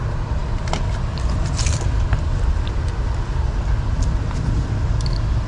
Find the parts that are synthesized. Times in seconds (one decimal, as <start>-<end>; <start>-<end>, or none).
none